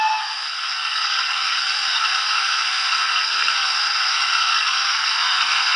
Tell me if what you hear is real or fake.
fake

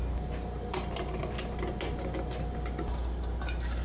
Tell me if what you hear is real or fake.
real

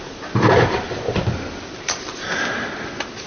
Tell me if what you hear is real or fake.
real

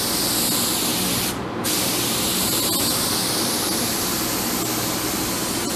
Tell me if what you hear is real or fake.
real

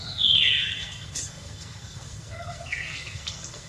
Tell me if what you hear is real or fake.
fake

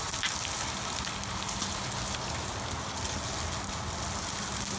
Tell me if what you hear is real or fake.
real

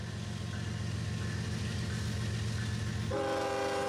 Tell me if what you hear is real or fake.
real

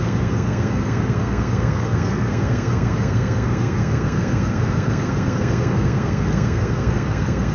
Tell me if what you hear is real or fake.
fake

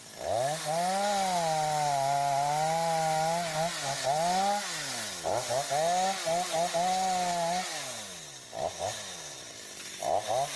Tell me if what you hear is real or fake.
real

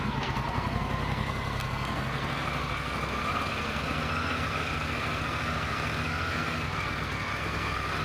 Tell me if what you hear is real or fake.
fake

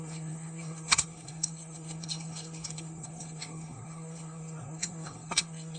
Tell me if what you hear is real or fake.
fake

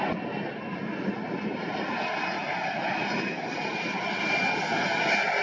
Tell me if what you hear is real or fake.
real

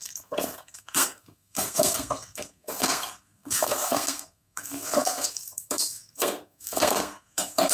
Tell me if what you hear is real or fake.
fake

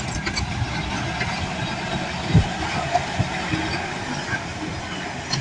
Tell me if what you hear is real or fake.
real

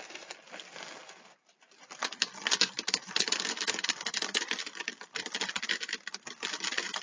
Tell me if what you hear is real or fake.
real